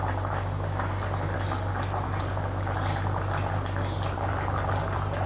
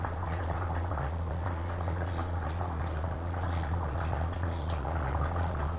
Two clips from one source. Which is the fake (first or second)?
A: second